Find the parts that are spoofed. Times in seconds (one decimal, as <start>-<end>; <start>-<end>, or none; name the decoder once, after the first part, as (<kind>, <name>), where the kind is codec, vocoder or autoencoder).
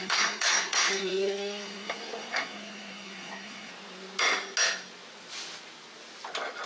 0.0-3.7 (codec, SNAC)